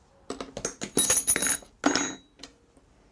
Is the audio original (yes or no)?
yes